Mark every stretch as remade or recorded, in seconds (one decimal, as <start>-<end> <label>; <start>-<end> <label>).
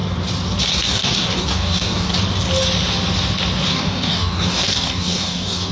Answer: 0.0-0.7 recorded; 0.7-2.1 remade; 2.1-3.7 recorded; 3.7-5.7 remade